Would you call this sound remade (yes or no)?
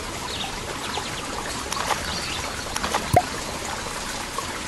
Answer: no